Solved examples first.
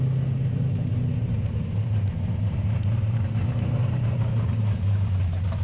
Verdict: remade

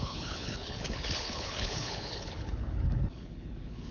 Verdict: remade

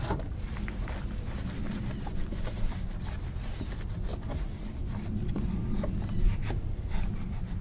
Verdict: recorded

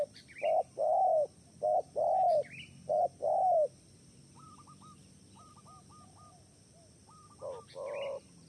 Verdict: recorded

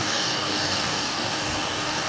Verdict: remade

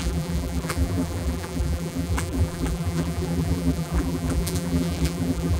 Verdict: remade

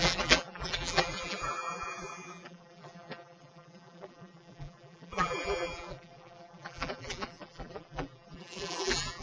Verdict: remade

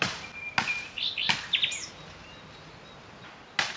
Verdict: recorded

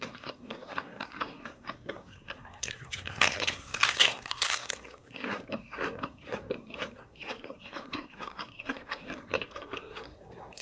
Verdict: remade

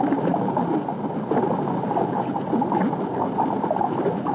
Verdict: recorded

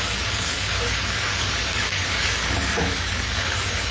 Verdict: remade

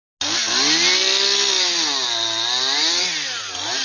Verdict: recorded